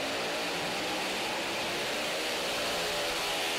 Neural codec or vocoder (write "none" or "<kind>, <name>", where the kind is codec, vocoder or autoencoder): none